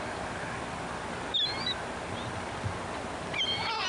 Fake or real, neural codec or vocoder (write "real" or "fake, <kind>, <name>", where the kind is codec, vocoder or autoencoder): real